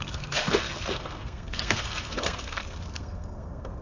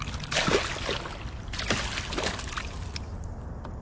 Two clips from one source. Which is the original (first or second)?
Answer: second